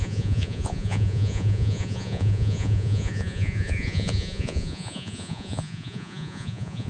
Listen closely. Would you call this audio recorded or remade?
remade